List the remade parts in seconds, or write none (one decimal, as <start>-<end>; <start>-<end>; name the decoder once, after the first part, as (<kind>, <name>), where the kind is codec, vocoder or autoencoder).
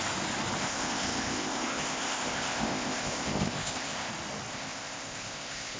0.6-4.1 (codec, ZipCodec); 4.5-5.8